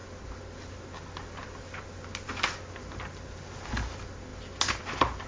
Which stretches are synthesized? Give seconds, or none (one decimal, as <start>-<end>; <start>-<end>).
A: none